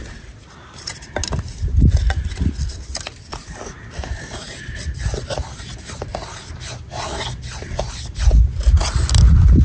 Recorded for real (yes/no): yes